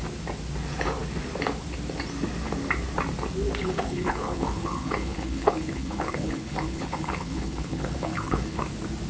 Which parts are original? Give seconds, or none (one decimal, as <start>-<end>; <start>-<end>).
0.0-3.6; 8.6-9.1